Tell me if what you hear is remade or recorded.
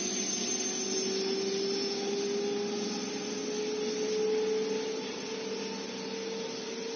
recorded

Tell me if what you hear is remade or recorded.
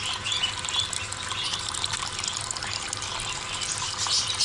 recorded